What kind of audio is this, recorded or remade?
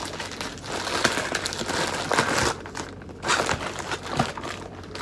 recorded